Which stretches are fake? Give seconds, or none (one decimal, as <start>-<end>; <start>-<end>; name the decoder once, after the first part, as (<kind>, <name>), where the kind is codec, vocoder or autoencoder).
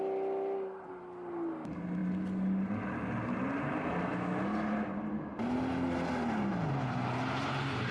none